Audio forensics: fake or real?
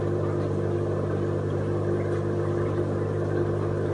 real